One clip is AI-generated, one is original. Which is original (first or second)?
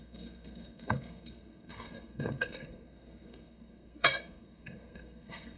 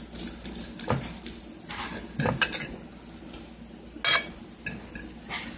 second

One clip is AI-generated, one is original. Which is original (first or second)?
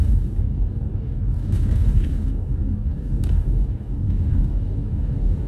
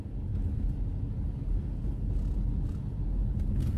second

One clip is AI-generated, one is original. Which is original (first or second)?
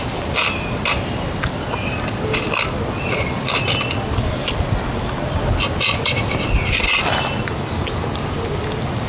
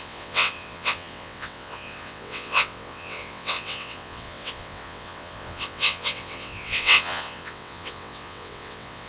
first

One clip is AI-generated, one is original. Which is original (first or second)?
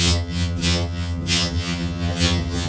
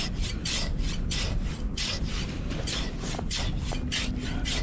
second